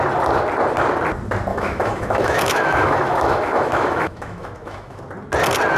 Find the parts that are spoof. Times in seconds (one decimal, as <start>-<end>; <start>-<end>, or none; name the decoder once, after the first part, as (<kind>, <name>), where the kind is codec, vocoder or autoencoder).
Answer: 1.5-5.0 (autoencoder, DAC-VAE)

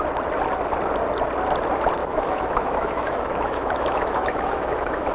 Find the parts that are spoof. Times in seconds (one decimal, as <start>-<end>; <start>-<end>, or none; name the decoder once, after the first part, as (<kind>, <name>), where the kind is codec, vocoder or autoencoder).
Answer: 2.0-5.1 (autoencoder, DAC-VAE)

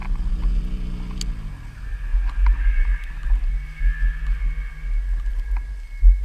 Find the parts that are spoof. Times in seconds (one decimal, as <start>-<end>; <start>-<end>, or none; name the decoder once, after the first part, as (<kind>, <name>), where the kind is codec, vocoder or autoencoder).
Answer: none

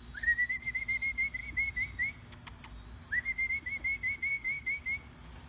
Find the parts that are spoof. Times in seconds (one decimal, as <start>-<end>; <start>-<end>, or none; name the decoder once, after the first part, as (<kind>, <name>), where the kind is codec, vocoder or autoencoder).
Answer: 4.3-4.8 (autoencoder, DAC-VAE)

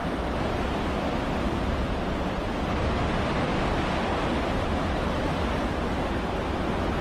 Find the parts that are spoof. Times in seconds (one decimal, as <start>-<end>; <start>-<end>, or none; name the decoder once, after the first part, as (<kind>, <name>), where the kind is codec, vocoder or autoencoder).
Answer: none